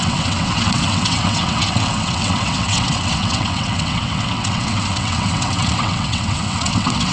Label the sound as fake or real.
fake